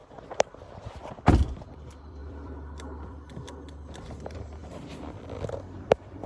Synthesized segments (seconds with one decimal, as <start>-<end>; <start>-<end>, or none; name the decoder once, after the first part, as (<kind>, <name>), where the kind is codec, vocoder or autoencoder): 0.0-4.6 (vocoder, BigVGAN v2); 5.8-6.3